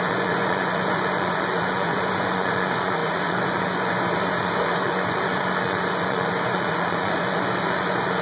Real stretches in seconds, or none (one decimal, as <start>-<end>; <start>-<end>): none